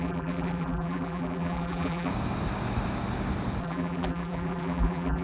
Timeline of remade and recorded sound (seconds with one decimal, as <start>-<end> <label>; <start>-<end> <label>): 0.0-2.1 remade; 2.1-3.6 recorded; 3.6-5.2 remade